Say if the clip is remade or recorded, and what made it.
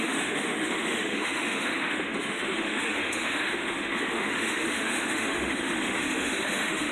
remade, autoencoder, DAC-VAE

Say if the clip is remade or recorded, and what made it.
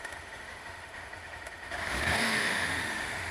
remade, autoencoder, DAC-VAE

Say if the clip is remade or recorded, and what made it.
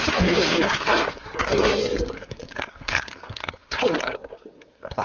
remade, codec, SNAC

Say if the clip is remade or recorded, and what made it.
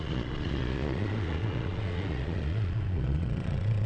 remade, vocoder, Vocos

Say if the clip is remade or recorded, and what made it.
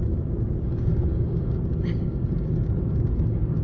remade, codec, DAC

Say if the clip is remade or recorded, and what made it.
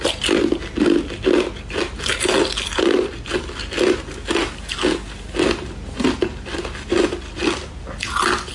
recorded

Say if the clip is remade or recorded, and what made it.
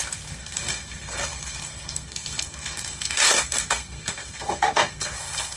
remade, codec, SNAC